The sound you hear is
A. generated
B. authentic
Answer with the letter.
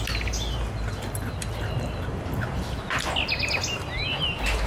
B